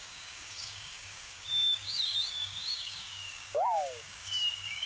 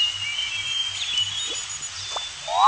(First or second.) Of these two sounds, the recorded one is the second